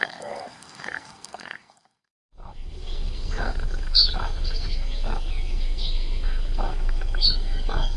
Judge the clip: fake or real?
fake